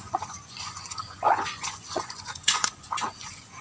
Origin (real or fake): fake